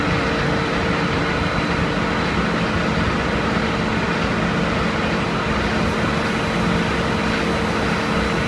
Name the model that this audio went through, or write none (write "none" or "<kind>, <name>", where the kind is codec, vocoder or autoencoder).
none